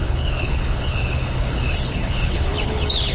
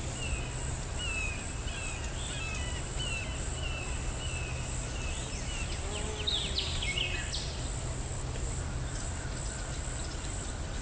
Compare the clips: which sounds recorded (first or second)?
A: second